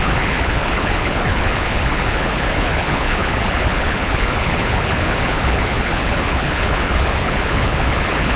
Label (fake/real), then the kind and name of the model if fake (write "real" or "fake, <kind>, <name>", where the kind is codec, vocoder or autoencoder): fake, codec, HILCodec